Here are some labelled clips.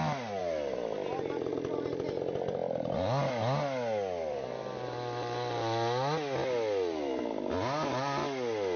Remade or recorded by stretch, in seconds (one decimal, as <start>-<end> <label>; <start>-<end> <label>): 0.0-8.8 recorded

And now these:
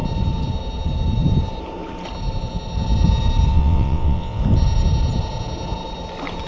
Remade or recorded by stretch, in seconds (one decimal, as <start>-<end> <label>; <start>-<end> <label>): 0.0-3.5 recorded; 3.5-4.4 remade; 4.4-6.5 recorded

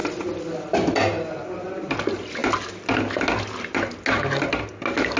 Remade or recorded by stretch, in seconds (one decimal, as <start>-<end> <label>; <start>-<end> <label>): 0.0-5.2 recorded

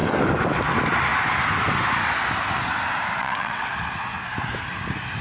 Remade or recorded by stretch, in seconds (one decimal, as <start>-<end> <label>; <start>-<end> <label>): 0.0-3.2 recorded; 3.2-3.7 remade; 3.7-5.2 recorded